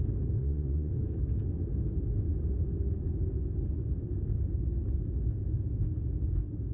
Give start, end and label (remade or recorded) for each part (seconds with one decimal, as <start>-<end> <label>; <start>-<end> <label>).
0.0-0.4 recorded; 0.4-0.9 remade; 0.9-6.7 recorded